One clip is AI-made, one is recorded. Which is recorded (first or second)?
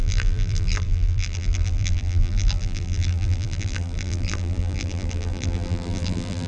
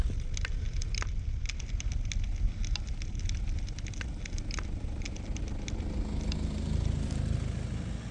second